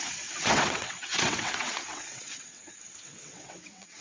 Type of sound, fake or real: fake